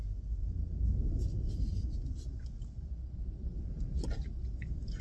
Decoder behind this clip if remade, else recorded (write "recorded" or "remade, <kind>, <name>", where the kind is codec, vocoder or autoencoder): recorded